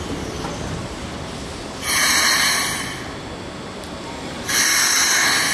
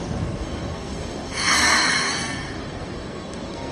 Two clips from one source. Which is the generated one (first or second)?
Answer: second